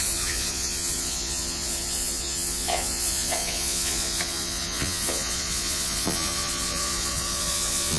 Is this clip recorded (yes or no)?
no